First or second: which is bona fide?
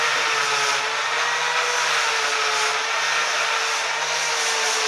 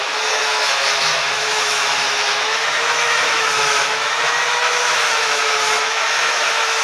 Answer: first